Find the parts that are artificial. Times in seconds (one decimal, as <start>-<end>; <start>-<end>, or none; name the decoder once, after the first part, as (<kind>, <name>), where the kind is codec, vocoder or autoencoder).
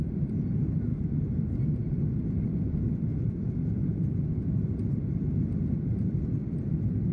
3.1-7.1 (vocoder, BigVGAN v2)